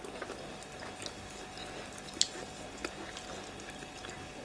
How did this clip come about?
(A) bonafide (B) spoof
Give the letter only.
A